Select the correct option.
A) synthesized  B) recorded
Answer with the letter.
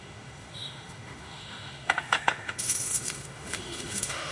A